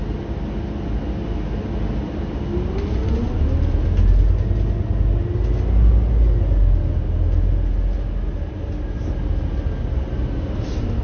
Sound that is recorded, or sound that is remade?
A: recorded